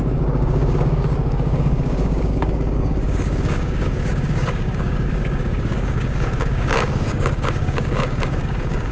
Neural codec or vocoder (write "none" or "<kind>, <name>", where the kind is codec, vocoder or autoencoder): codec, DAC